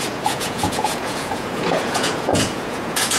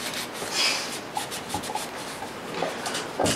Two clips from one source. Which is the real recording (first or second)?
second